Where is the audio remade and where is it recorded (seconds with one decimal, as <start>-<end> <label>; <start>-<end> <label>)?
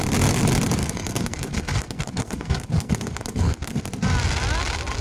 0.0-0.8 recorded; 0.8-3.8 remade; 3.8-5.0 recorded